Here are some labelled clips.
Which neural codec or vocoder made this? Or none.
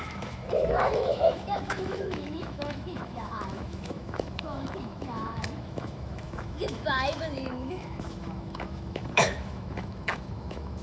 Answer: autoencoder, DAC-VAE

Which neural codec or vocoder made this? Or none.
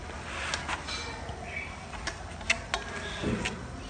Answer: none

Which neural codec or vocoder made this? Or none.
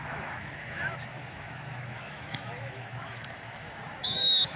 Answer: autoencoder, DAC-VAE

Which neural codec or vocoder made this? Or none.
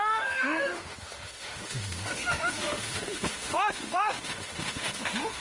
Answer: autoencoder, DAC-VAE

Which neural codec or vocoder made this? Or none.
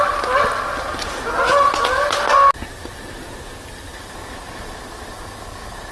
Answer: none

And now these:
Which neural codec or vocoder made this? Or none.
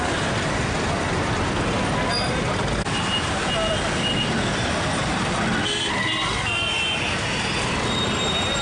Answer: none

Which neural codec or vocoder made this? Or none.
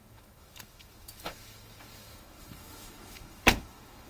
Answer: autoencoder, DAC-VAE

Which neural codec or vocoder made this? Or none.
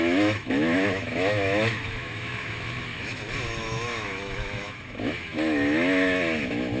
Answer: autoencoder, DAC-VAE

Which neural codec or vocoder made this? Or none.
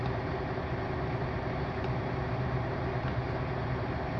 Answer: none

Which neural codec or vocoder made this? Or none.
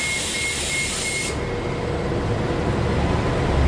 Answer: none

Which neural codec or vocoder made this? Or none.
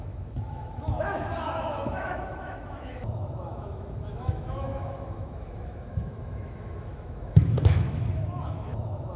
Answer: autoencoder, DAC-VAE